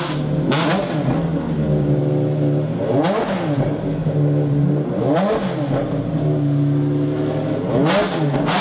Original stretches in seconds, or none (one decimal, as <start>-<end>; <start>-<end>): 0.0-8.6